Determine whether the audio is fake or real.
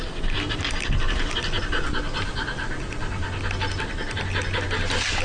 real